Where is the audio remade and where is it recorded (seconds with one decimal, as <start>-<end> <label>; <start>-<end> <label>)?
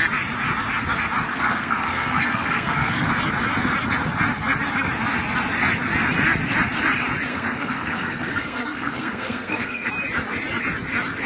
0.0-1.3 recorded; 1.3-3.1 remade; 3.1-7.3 recorded; 7.3-9.9 remade; 9.9-11.3 recorded